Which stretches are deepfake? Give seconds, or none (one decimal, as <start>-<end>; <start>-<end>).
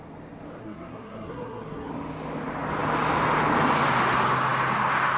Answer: 0.6-1.9